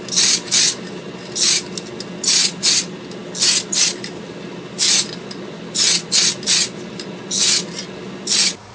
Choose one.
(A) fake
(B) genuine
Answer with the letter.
B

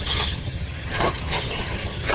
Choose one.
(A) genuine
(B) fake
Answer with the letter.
B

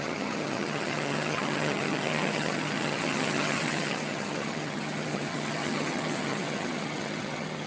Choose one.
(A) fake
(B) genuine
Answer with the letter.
A